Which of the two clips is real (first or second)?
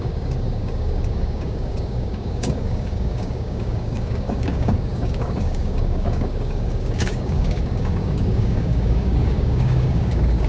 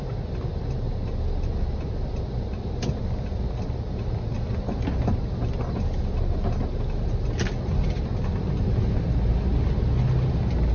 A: second